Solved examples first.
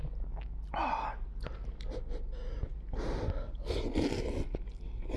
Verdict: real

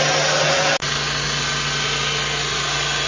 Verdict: real